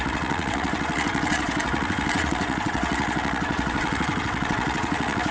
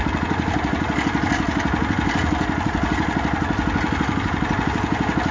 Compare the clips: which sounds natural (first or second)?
second